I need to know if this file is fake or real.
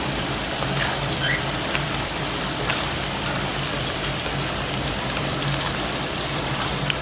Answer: fake